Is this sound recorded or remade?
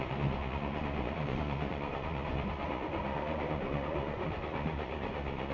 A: remade